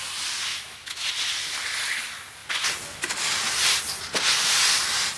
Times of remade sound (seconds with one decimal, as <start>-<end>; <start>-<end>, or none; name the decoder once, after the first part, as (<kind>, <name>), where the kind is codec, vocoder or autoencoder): 0.5-1.1 (autoencoder, DAC-VAE)